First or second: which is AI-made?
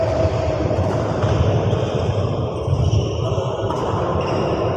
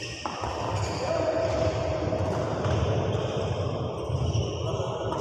first